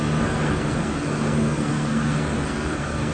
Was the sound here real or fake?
fake